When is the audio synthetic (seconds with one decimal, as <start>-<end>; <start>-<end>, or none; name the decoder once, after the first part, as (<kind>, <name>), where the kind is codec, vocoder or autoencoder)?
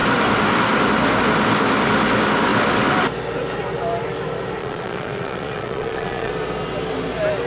4.6-6.3 (vocoder, Vocos)